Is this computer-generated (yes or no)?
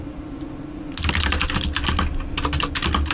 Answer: no